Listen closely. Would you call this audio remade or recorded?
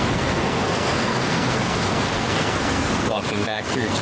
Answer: remade